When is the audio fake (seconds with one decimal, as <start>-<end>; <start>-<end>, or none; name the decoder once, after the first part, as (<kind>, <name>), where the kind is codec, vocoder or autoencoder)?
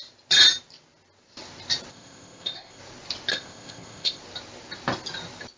1.9-2.8 (codec, ZipCodec); 3.3-4.2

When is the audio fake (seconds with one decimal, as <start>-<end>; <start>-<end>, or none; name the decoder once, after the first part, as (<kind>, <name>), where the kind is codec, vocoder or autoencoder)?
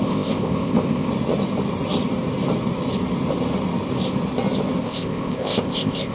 0.0-1.1 (codec, ZipCodec); 4.8-6.1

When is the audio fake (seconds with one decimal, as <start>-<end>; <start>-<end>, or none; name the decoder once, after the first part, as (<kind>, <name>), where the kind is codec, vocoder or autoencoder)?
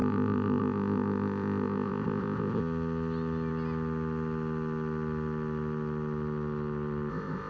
0.0-2.6 (codec, ZipCodec); 7.1-7.5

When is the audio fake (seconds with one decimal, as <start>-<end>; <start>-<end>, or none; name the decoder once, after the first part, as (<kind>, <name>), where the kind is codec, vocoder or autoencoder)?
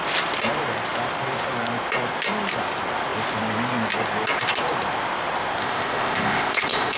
5.6-7.0 (codec, ZipCodec)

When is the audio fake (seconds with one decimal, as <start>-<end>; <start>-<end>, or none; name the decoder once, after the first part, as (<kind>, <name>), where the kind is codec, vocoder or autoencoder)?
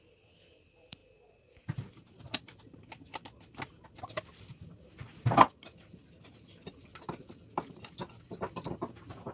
none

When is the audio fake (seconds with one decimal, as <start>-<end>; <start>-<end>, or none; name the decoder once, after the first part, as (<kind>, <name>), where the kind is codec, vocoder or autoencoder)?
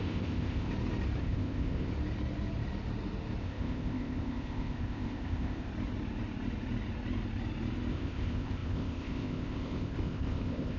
0.0-0.7 (codec, ZipCodec); 1.2-1.9; 3.4-5.7; 7.9-10.8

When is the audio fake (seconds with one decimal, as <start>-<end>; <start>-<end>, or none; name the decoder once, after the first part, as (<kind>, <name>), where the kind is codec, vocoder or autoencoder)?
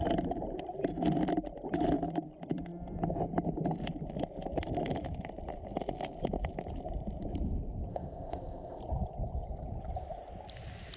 7.9-8.8 (codec, ZipCodec)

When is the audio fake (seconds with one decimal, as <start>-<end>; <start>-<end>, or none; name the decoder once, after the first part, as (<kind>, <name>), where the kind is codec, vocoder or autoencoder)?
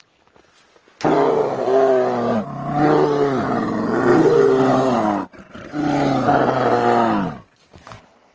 none